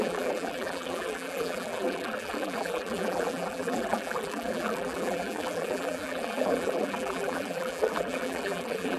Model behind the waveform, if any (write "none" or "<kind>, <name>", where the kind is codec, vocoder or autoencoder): vocoder, BigVGAN v2